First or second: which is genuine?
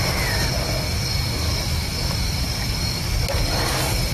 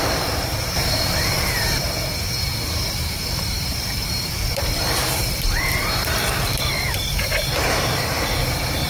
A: first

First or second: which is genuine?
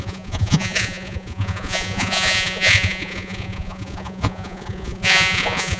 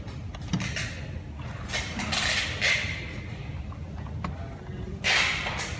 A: second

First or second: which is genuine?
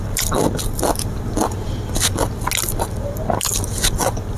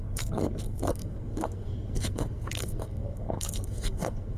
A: first